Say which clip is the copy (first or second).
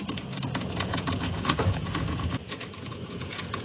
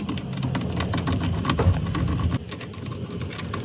first